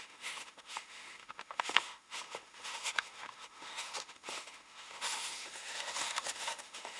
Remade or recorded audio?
remade